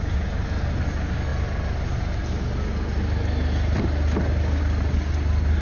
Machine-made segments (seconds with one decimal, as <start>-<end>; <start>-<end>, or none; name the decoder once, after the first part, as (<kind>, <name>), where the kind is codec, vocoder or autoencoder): none